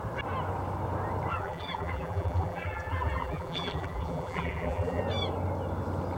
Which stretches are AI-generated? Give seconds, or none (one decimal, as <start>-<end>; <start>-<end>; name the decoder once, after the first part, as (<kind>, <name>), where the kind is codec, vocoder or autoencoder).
1.3-5.0 (vocoder, BigVGAN v2)